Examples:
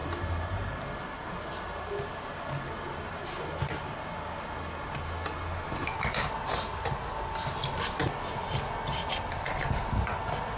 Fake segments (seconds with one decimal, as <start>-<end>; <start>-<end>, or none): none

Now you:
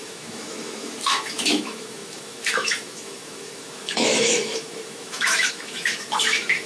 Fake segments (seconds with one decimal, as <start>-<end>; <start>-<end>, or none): 0.0-6.7

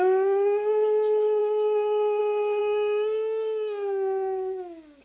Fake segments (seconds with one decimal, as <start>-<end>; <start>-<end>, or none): 1.4-2.2; 2.6-5.0